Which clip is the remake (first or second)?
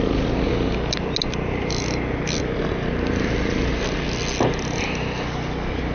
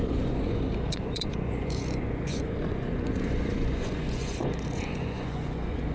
second